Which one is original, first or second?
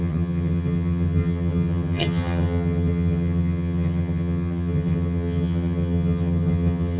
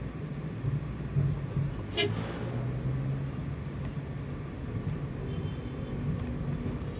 second